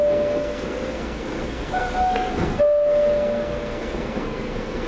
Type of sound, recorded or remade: remade